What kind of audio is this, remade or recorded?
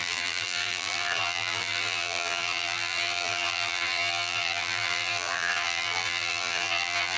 remade